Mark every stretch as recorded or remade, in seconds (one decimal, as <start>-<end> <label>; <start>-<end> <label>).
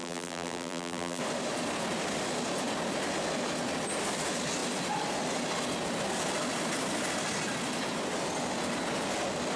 0.0-1.2 remade; 1.2-9.6 recorded